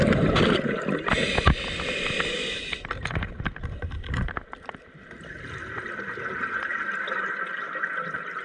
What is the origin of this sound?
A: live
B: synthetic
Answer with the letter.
A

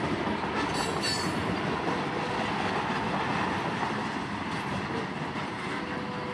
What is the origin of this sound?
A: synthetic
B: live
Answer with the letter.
B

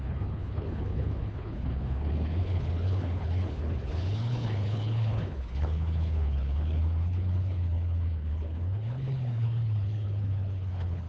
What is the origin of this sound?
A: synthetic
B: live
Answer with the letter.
A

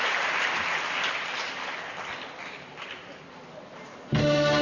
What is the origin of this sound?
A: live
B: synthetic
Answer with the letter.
A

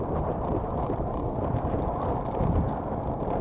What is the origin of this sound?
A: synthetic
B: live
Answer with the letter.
B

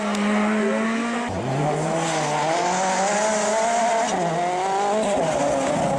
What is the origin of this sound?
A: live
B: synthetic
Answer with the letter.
A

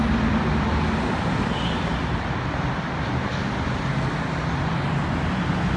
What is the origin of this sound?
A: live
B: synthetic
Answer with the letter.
A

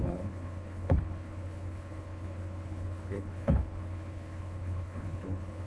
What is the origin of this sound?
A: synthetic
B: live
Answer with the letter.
A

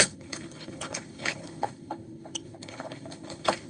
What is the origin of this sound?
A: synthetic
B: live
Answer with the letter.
A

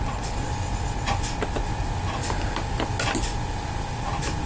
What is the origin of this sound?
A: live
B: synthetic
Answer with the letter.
A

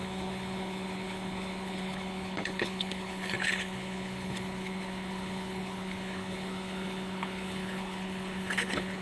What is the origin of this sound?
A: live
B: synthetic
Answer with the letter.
B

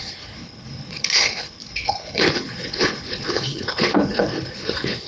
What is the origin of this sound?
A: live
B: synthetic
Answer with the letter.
B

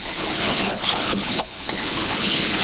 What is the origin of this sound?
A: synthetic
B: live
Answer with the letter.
A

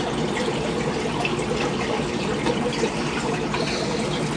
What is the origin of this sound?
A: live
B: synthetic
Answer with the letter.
A